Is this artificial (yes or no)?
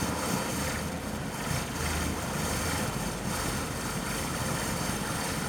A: no